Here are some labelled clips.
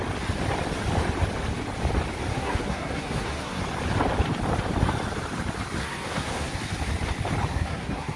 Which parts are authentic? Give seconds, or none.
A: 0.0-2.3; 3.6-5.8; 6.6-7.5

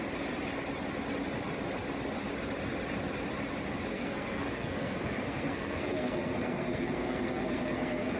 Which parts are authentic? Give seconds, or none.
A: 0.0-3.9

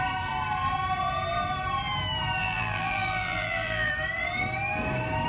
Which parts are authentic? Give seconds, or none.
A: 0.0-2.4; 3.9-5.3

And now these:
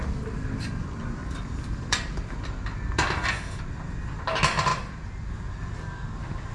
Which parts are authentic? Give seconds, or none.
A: 0.0-1.2; 3.5-4.7; 5.3-6.5

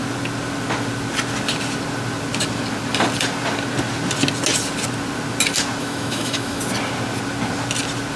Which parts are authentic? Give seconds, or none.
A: 0.0-5.8; 6.6-8.2

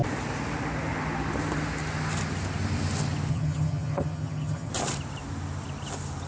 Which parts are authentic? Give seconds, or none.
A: 0.0-3.3; 4.7-6.3